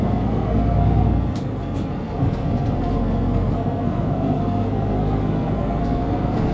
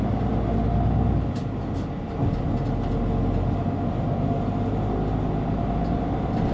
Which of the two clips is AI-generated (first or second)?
first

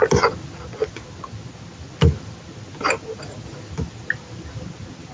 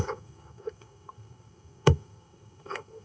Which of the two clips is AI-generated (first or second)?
second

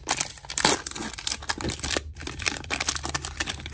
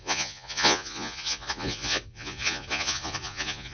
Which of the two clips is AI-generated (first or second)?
second